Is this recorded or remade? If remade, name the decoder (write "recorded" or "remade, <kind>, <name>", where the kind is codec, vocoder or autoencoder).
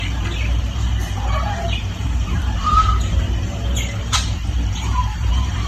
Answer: remade, vocoder, BigVGAN v2